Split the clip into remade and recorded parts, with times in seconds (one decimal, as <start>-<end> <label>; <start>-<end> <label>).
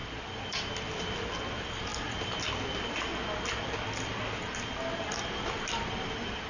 0.0-6.5 recorded